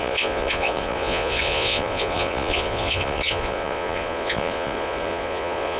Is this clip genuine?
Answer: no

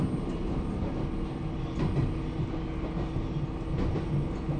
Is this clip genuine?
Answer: yes